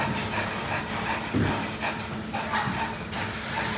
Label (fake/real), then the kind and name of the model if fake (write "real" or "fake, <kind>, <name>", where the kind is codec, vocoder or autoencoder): real